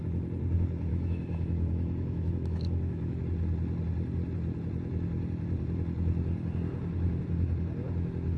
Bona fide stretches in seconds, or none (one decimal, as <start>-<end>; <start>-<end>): 0.0-0.9; 3.2-8.4